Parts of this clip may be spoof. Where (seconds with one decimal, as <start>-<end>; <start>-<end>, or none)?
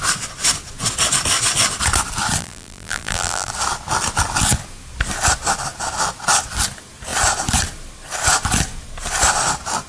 2.4-3.5